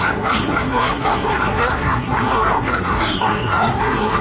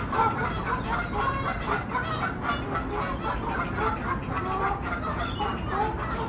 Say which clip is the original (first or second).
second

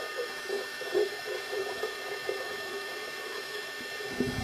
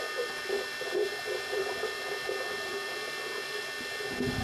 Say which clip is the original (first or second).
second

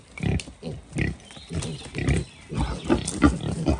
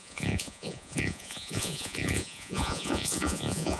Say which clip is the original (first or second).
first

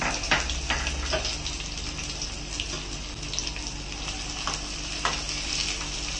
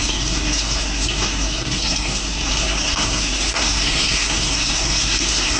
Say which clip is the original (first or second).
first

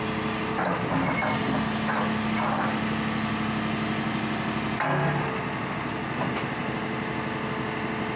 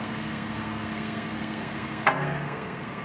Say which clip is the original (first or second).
first